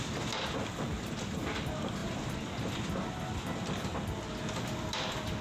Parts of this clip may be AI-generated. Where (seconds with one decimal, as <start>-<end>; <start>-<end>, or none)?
none

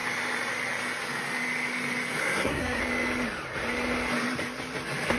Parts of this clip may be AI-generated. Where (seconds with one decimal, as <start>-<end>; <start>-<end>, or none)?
2.2-2.8

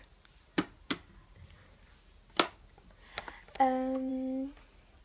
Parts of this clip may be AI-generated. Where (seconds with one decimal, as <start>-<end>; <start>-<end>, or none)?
none

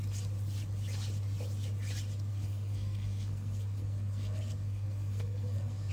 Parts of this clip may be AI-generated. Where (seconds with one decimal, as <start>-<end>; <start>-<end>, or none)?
2.3-5.9

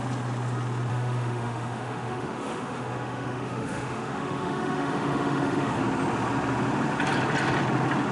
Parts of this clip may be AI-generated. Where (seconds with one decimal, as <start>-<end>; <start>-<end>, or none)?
0.9-5.8

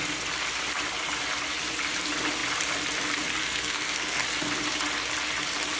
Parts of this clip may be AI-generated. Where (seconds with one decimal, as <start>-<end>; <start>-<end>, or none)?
3.4-4.2